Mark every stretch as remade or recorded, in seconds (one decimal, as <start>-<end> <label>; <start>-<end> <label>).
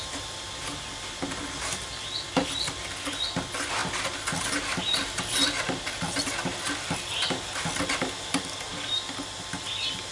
0.0-10.1 recorded